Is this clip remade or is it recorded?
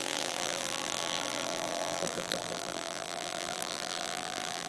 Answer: remade